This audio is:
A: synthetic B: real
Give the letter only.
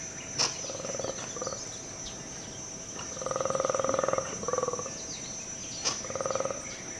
B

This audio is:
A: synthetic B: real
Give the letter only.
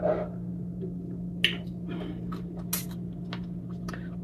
B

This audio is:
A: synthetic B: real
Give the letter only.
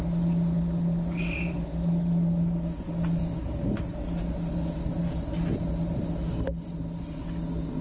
B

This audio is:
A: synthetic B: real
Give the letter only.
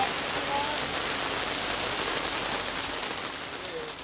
B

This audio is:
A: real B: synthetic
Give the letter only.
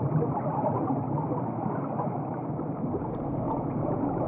A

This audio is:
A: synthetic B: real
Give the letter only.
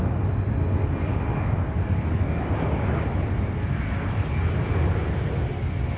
B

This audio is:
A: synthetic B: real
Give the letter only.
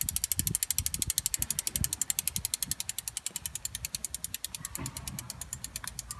B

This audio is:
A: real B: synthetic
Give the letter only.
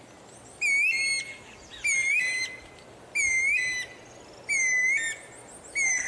A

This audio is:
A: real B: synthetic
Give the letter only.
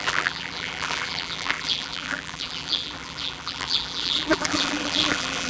B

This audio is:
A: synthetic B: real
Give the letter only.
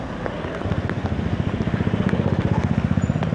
B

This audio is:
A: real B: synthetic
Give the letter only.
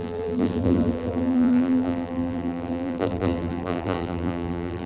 B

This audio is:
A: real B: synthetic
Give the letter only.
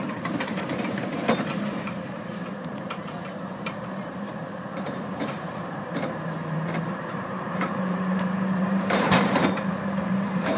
B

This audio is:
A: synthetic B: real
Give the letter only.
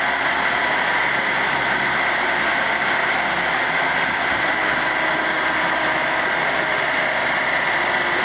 B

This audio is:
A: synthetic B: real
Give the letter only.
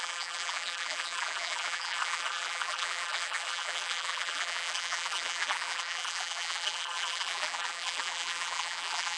A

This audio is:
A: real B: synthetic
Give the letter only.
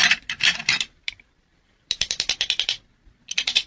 B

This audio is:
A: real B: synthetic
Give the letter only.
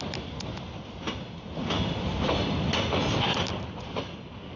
A